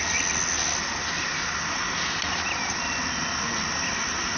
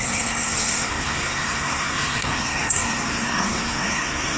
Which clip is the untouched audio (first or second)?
first